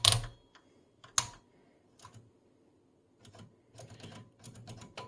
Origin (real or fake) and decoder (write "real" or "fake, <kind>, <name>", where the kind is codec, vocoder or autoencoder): real